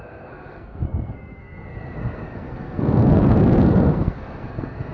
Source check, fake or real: fake